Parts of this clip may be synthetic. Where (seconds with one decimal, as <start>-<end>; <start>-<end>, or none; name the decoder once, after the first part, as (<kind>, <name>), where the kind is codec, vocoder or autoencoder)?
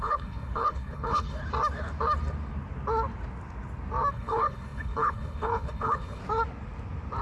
0.0-1.4 (codec, HILCodec); 4.1-6.2